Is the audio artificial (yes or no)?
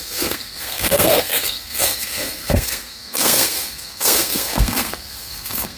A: yes